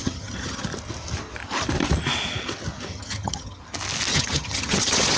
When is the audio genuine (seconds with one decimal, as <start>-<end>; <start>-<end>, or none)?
0.6-2.9; 3.6-4.1